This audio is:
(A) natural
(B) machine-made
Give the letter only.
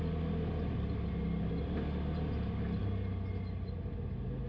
A